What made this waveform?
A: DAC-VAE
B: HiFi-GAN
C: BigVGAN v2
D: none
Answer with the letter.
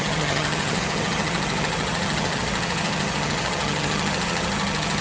B